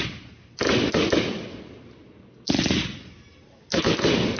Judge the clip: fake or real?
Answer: real